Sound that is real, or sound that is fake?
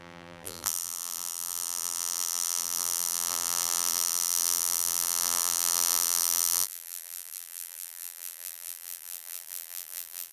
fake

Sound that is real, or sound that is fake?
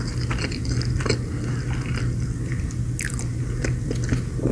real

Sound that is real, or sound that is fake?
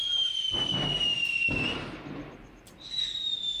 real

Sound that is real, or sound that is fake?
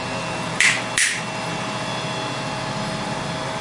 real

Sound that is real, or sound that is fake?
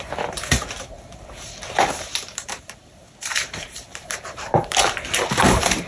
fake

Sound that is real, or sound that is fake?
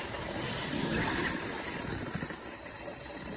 fake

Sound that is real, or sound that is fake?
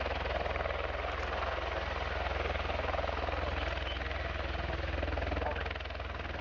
real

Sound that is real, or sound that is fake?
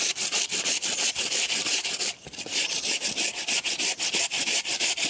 fake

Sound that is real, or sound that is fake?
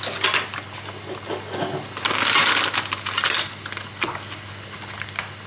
real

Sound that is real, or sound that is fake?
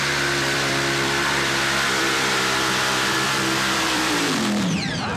fake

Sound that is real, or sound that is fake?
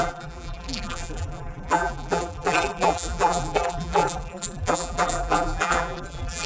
fake